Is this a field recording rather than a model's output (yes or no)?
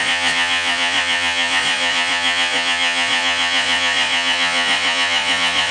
no